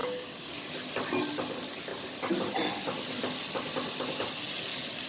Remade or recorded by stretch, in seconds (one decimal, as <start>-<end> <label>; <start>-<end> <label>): 0.0-0.5 remade; 0.5-5.1 recorded